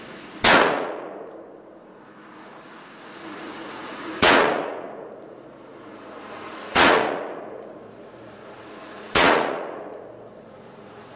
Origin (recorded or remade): remade